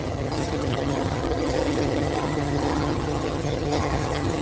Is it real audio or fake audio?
fake